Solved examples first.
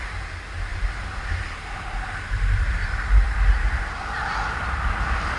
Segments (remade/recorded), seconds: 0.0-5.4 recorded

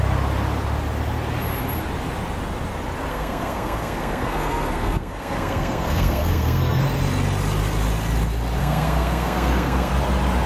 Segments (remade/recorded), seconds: 0.0-3.1 recorded; 3.1-6.8 remade; 6.8-8.6 recorded; 8.6-9.9 remade; 9.9-10.5 recorded

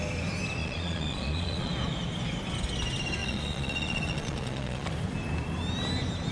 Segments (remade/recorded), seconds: 0.0-0.6 recorded; 0.6-1.7 remade; 1.7-3.2 recorded; 3.2-4.9 remade; 4.9-6.3 recorded

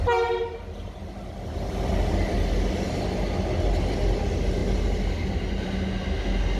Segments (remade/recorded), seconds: 0.0-6.6 recorded

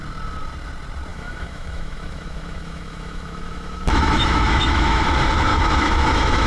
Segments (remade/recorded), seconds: 0.0-1.1 recorded; 1.1-5.0 remade; 5.0-5.5 recorded; 5.5-6.5 remade

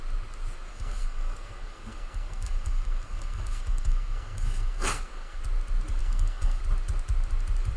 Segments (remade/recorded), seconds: 0.0-0.7 recorded; 0.7-5.4 remade; 5.4-6.0 recorded; 6.0-6.6 remade; 6.6-7.8 recorded

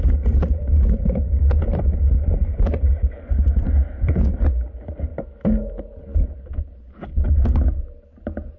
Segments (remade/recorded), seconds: 0.0-8.6 recorded

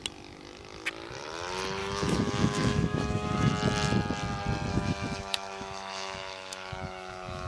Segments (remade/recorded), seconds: 0.0-1.8 recorded; 1.8-3.5 remade; 3.5-4.7 recorded; 4.7-7.5 remade